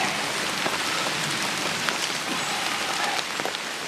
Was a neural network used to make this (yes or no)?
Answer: no